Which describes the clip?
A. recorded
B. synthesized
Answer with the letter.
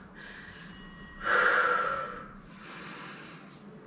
A